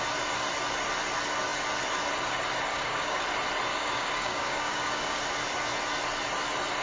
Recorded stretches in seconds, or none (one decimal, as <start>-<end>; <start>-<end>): 0.0-2.7; 3.2-3.7; 5.2-6.8